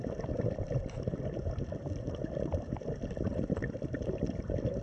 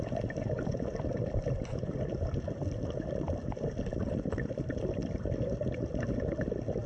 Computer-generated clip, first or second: first